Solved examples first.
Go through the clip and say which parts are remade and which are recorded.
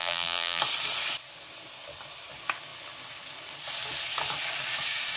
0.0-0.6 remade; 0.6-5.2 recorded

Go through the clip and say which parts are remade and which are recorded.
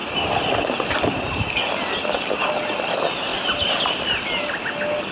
0.0-5.1 recorded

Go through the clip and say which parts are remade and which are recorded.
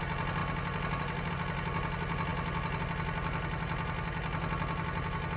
0.0-5.4 recorded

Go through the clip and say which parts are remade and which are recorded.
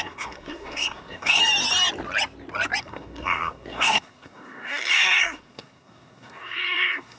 0.0-1.4 remade; 1.4-2.8 recorded; 2.8-7.2 remade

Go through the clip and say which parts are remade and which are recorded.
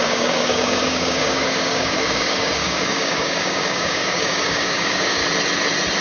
0.0-5.2 remade; 5.2-6.0 recorded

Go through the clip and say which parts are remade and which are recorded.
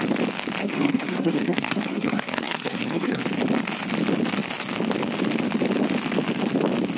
0.0-0.6 recorded; 0.6-3.2 remade; 3.2-7.0 recorded